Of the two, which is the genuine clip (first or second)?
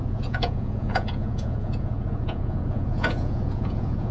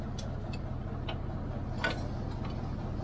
second